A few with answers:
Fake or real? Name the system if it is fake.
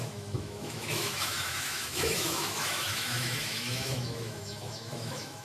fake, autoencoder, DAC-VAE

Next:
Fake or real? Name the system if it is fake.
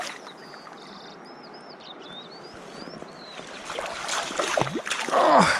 real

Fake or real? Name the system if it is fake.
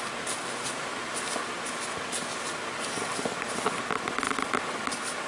real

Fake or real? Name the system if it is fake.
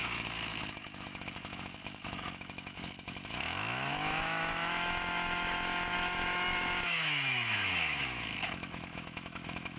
fake, autoencoder, DAC-VAE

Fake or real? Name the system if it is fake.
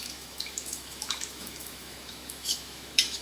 fake, autoencoder, DAC-VAE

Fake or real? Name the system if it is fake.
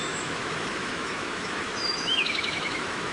fake, autoencoder, DAC-VAE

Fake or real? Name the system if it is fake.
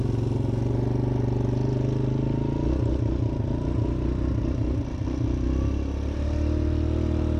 real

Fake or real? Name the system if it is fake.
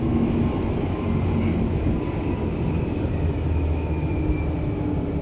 real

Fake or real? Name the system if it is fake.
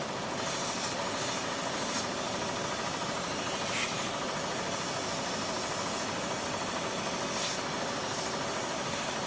real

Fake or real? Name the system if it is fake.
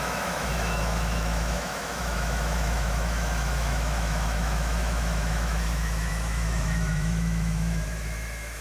fake, autoencoder, DAC-VAE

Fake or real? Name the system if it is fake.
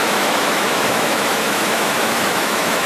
fake, autoencoder, DAC-VAE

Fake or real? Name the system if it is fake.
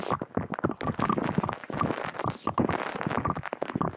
real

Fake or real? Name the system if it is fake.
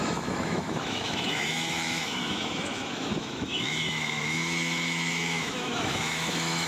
fake, autoencoder, DAC-VAE